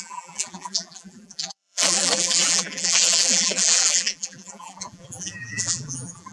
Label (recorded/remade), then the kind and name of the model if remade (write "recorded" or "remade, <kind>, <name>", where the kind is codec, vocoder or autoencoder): remade, vocoder, BigVGAN v2